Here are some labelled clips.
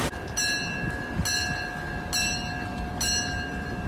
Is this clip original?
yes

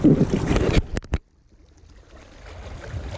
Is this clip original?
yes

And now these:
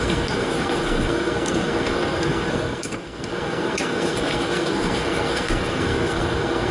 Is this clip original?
no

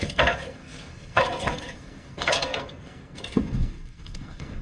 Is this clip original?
no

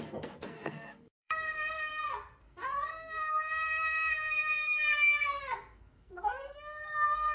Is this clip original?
no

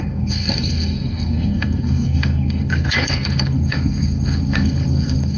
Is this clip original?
no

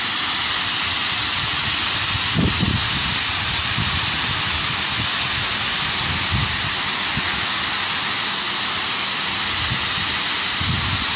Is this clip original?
yes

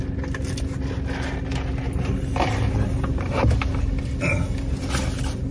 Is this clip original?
yes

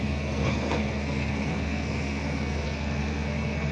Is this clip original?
no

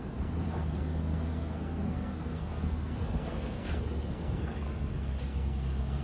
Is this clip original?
no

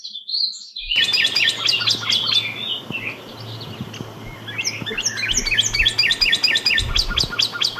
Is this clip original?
yes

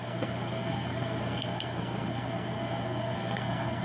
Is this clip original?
no